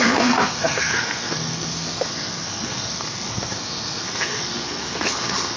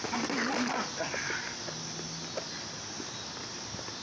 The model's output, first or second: first